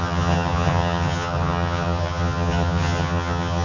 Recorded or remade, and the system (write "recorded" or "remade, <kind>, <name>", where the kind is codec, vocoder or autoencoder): remade, vocoder, HiFi-GAN